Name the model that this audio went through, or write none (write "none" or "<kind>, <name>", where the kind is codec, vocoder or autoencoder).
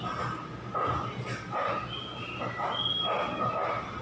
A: none